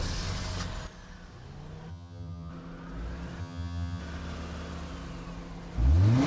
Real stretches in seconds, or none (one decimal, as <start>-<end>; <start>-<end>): 0.0-1.9; 2.5-3.4; 4.0-6.3

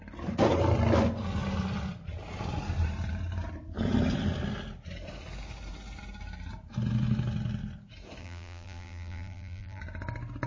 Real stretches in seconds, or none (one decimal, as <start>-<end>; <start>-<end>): 0.0-8.2; 9.8-10.5